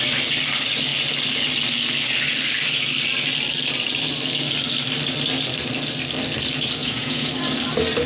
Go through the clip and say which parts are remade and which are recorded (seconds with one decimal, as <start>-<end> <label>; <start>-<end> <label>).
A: 0.0-6.8 recorded; 6.8-7.3 remade; 7.3-8.1 recorded